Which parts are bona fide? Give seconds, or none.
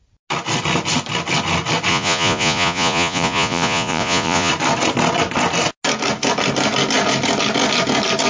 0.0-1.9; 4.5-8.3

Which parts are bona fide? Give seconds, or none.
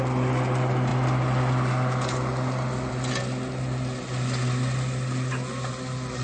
0.0-6.2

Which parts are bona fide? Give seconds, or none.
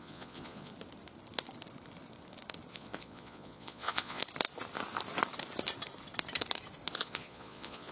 0.7-2.7; 4.2-6.9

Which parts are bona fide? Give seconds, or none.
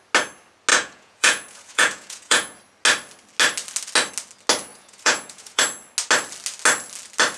0.0-0.7; 2.6-4.7; 5.6-7.4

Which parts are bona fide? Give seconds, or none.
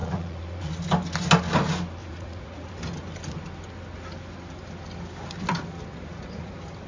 0.7-2.0; 2.7-5.9; 6.5-6.9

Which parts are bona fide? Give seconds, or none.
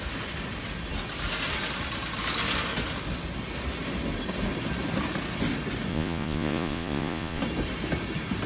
0.0-5.9; 7.4-8.5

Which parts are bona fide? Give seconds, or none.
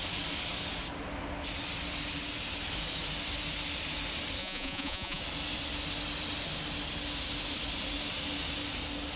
0.0-4.4; 5.2-9.2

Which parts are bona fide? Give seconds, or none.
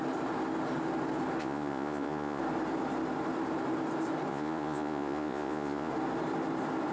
0.0-1.4; 2.4-4.3; 5.9-6.9